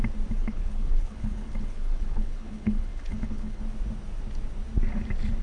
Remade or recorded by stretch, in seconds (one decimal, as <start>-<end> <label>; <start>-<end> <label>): 0.0-0.4 recorded; 0.4-3.6 remade; 3.6-5.4 recorded